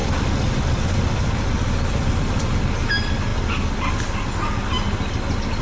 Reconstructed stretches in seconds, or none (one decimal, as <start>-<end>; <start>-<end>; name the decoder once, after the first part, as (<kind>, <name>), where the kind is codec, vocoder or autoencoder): 0.0-2.4 (vocoder, BigVGAN v2)